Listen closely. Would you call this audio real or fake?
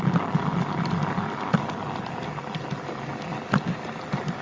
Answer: real